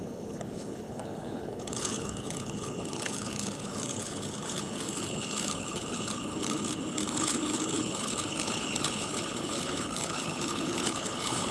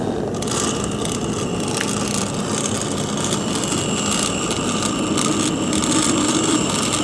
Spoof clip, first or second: first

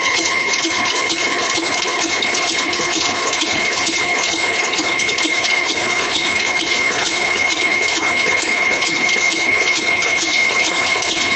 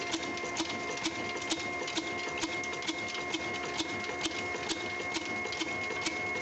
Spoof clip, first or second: first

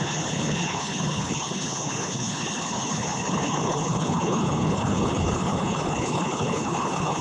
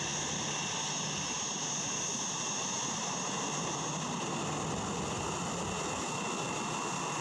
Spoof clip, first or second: first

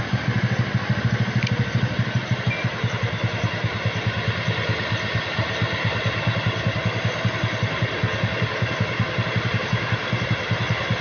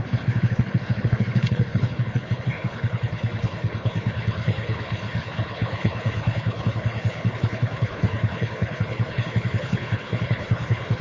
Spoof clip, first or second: second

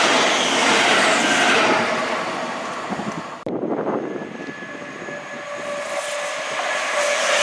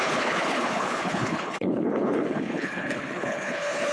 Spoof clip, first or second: second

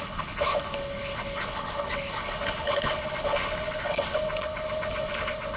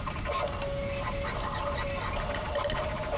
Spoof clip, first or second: first